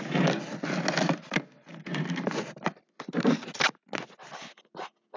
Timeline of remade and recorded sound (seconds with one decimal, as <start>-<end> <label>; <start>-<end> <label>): 0.0-5.2 recorded